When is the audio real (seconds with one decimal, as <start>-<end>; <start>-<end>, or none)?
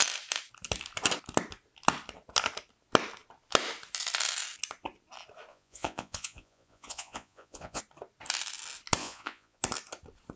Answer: 0.0-5.5; 7.8-9.0; 9.6-10.4